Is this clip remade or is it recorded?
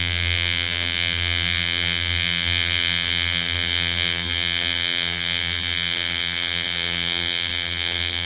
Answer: remade